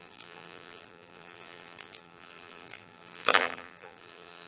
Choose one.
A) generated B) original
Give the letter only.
A